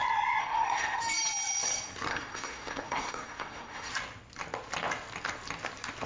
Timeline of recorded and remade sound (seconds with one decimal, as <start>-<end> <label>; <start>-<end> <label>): 0.0-0.4 recorded; 0.4-1.0 remade; 1.0-2.1 recorded; 2.1-3.9 remade; 3.9-6.1 recorded